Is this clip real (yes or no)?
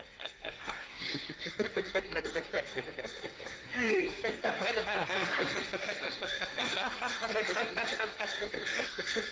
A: no